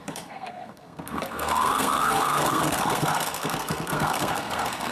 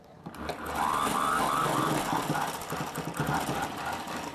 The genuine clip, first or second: second